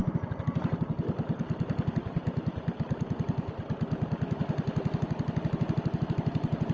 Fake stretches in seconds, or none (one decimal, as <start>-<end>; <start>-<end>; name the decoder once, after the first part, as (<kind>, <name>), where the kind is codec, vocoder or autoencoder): none